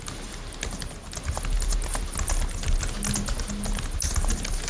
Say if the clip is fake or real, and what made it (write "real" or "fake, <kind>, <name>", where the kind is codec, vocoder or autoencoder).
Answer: real